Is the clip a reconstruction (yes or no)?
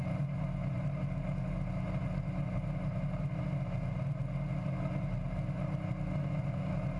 no